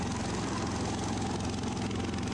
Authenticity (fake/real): real